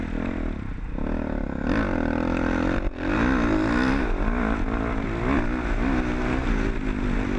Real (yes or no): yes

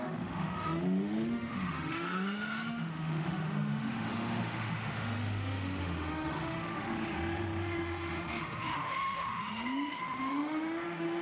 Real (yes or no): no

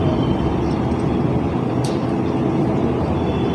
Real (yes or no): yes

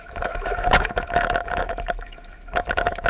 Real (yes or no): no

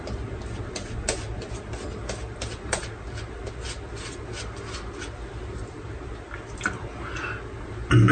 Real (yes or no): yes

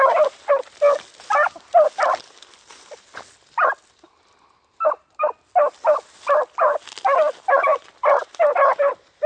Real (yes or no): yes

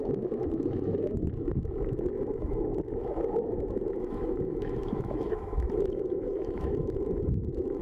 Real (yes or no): no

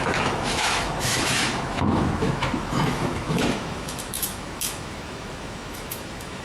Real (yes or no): no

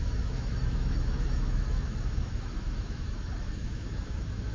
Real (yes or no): no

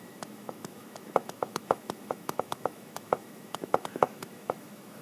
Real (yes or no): no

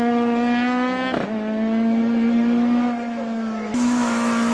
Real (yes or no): no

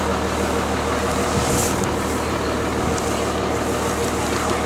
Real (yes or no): yes